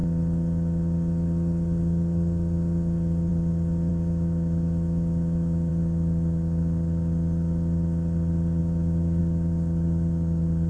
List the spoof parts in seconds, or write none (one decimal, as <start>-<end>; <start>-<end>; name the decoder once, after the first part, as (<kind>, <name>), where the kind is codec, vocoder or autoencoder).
3.9-5.7 (autoencoder, DAC-VAE); 8.6-9.2